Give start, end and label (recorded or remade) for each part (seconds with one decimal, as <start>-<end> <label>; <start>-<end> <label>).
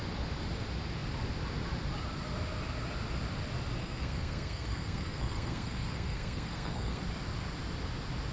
0.0-3.8 recorded; 3.8-7.0 remade; 7.0-8.3 recorded